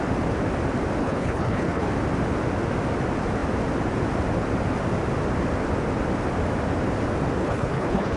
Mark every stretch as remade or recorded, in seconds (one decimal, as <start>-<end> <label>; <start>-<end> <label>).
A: 0.0-1.0 recorded; 1.0-1.9 remade; 1.9-7.4 recorded; 7.4-8.2 remade